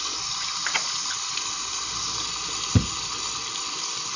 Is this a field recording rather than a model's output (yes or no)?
no